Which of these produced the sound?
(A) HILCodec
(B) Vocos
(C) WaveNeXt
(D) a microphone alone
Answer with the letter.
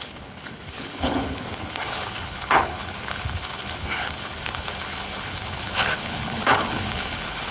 A